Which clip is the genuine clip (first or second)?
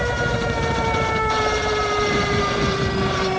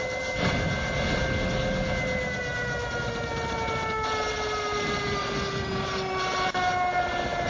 second